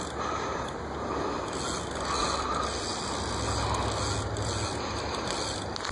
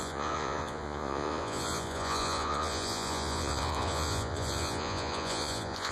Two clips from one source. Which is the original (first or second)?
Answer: first